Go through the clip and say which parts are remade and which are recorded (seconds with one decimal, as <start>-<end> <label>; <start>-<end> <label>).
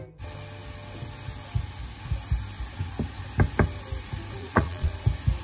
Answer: 0.0-4.4 recorded; 4.4-4.9 remade; 4.9-5.4 recorded